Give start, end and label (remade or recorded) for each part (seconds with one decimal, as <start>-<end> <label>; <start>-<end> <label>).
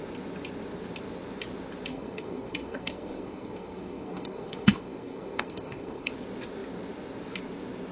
0.0-1.9 recorded; 1.9-6.1 remade; 6.1-7.9 recorded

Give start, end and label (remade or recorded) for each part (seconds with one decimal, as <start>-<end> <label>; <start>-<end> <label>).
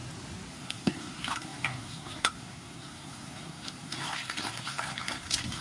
0.0-0.5 recorded; 0.5-5.6 remade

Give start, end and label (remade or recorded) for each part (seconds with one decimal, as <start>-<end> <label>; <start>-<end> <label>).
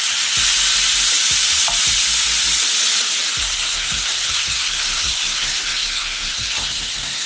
0.0-3.4 recorded; 3.4-7.3 remade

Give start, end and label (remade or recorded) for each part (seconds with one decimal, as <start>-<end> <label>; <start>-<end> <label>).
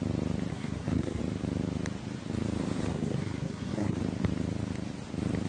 0.0-0.5 recorded; 0.5-1.2 remade; 1.2-2.9 recorded; 2.9-4.0 remade; 4.0-5.5 recorded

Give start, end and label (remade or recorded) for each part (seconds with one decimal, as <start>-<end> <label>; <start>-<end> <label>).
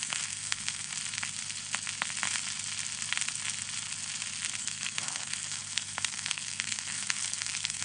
0.0-0.9 remade; 0.9-4.6 recorded; 4.6-7.8 remade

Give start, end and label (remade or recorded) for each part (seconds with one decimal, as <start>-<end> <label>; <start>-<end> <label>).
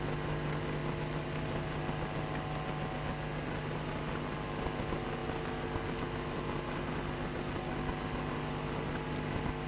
0.0-9.7 recorded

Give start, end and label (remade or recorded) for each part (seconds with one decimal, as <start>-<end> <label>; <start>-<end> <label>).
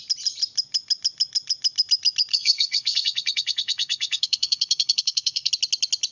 0.0-2.3 recorded; 2.3-5.5 remade; 5.5-6.1 recorded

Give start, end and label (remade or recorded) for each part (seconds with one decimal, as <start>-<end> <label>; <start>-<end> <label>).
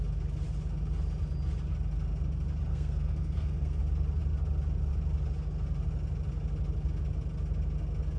0.0-2.7 recorded; 2.7-3.8 remade; 3.8-8.2 recorded